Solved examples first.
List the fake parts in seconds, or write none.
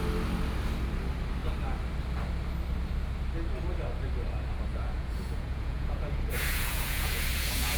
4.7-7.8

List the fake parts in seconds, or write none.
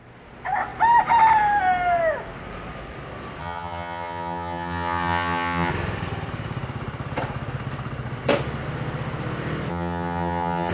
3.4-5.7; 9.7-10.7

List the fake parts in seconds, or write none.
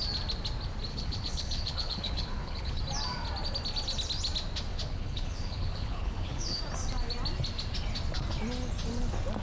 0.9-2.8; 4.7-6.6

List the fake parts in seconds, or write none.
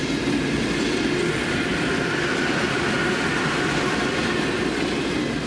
none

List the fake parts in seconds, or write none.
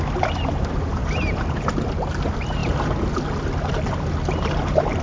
none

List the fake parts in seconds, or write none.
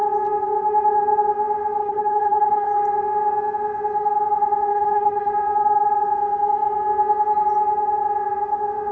1.8-2.8; 4.7-5.3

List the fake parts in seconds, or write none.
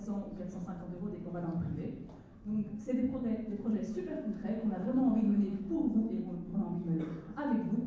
2.3-5.6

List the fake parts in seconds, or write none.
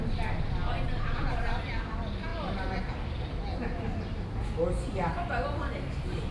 none